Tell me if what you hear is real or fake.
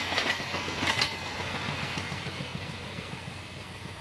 fake